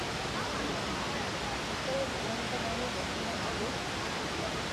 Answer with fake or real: real